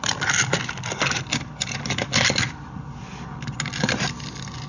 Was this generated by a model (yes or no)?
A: no